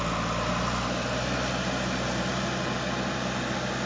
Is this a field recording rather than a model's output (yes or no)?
yes